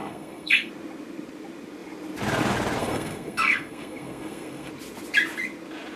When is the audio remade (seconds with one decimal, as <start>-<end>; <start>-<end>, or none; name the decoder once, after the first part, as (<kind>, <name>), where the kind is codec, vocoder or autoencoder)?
0.0-0.7 (codec, SNAC); 2.8-4.7